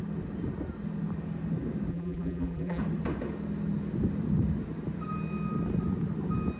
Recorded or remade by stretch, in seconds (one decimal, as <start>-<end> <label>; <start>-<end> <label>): 0.0-1.9 recorded; 1.9-2.8 remade; 2.8-6.6 recorded